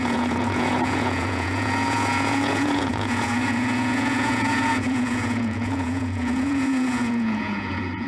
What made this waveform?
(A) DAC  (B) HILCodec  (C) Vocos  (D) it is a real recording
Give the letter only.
C